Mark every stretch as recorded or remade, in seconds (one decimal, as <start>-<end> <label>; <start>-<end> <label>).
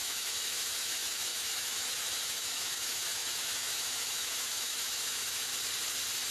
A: 0.0-5.5 remade; 5.5-6.3 recorded